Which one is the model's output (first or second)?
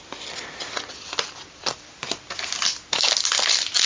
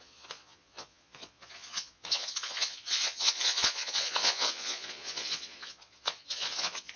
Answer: second